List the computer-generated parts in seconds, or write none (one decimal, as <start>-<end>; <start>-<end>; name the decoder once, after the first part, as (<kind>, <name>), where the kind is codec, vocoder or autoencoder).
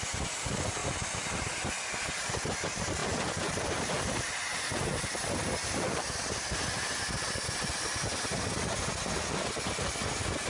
none